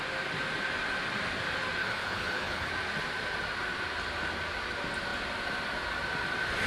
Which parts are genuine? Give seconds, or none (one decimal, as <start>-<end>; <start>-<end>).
0.0-1.8; 2.7-6.7